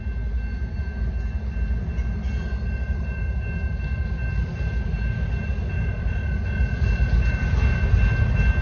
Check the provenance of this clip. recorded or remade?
recorded